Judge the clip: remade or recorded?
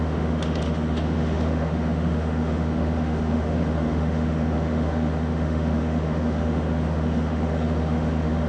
remade